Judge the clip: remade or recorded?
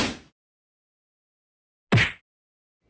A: recorded